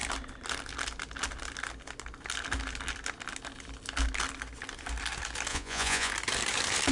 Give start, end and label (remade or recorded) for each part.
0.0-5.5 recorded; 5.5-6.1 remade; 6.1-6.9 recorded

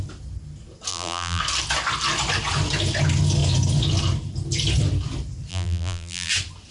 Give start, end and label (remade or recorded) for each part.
0.0-0.9 recorded; 0.9-1.4 remade; 1.4-5.5 recorded; 5.5-6.3 remade; 6.3-6.7 recorded

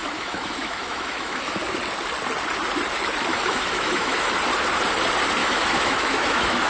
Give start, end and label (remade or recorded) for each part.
0.0-1.6 remade; 1.6-3.3 recorded; 3.3-4.3 remade; 4.3-5.4 recorded; 5.4-6.7 remade

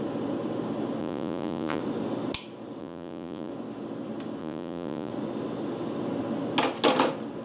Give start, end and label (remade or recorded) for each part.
0.0-1.0 recorded; 1.0-1.8 remade; 1.8-2.8 recorded; 2.8-3.5 remade; 3.5-4.4 recorded; 4.4-5.1 remade; 5.1-7.4 recorded

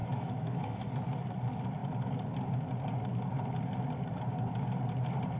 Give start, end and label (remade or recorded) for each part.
0.0-0.9 remade; 0.9-5.4 recorded

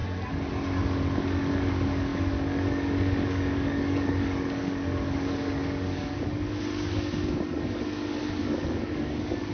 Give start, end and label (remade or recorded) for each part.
0.0-0.8 recorded; 0.8-9.5 remade

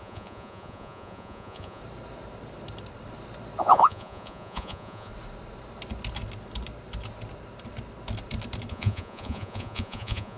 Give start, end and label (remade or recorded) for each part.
0.0-1.8 remade; 1.8-3.6 recorded; 3.6-5.1 remade; 5.1-8.7 recorded; 8.7-10.4 remade